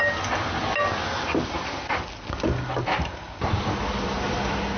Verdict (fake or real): real